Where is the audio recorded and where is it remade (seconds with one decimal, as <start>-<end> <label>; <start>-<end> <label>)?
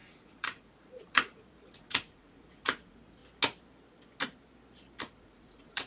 0.0-3.2 remade; 3.2-5.0 recorded; 5.0-5.9 remade